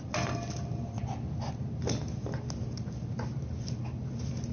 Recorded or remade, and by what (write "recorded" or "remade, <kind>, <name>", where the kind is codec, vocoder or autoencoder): recorded